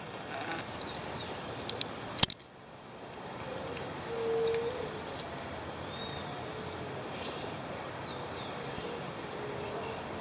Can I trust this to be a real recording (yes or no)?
yes